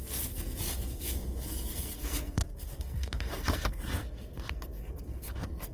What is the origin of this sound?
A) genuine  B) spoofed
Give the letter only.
B